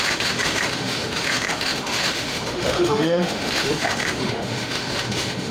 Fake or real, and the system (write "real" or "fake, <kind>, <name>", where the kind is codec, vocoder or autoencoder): fake, autoencoder, DAC-VAE